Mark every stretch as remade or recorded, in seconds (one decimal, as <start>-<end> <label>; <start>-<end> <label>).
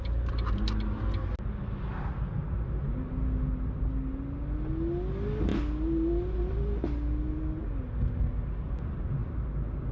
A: 0.0-9.9 recorded